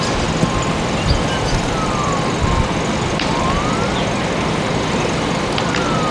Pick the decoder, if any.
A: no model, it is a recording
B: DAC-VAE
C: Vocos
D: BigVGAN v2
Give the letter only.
A